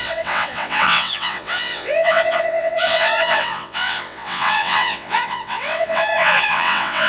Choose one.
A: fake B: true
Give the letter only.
A